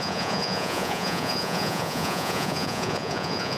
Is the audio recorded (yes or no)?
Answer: no